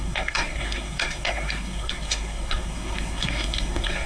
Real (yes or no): no